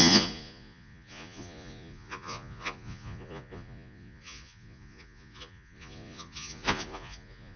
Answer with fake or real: fake